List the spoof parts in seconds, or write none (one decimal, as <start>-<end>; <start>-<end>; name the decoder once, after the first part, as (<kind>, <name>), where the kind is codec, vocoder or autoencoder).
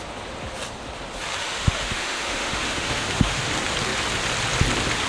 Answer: 1.4-3.5 (autoencoder, DAC-VAE)